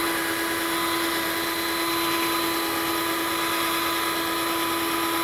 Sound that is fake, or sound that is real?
real